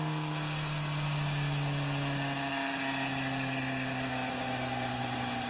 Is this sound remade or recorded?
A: recorded